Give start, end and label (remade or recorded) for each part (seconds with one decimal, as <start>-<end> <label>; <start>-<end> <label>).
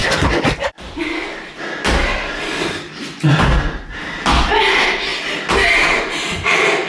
0.0-6.9 recorded